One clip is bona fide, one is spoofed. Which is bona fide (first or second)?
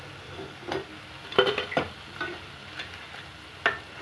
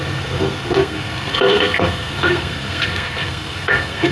first